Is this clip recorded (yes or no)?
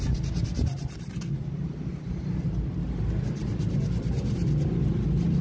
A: yes